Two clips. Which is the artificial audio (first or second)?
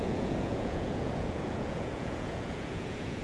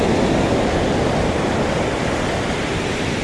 first